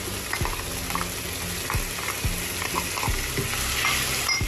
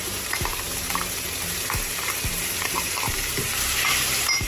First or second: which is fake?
second